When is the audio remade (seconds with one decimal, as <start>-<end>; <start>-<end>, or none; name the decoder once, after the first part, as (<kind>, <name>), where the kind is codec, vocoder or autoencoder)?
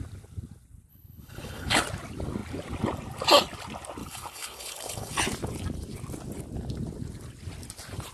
0.9-1.8 (codec, HILCodec); 4.0-5.2